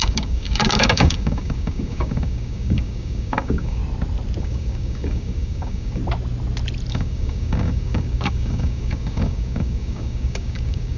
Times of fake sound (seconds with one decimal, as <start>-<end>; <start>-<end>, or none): 0.0-3.8; 4.4-6.0; 6.9-11.0